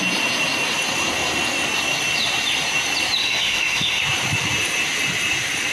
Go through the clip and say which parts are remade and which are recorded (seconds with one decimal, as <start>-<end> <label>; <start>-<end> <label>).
0.0-3.2 recorded; 3.2-4.0 remade; 4.0-5.7 recorded